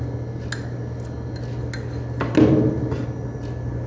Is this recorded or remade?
recorded